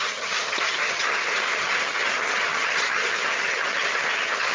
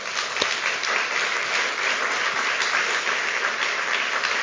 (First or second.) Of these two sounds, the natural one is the second